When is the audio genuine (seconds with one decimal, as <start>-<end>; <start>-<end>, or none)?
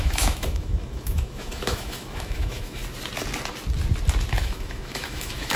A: 2.8-4.4